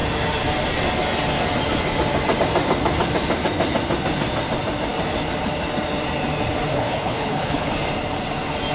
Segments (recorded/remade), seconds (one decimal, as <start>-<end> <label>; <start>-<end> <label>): 0.0-6.7 recorded; 6.7-7.7 remade; 7.7-8.7 recorded